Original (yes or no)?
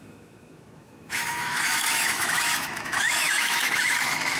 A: no